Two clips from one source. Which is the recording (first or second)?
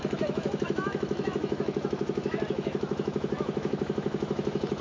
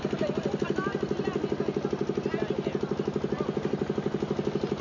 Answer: second